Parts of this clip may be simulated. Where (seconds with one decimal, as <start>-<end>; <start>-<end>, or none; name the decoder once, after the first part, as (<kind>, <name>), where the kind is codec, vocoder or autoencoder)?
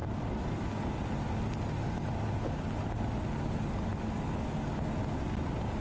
none